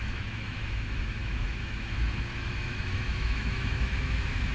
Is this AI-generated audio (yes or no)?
yes